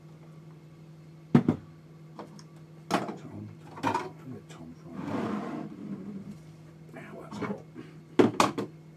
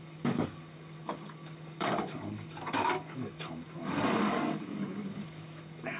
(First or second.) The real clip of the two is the first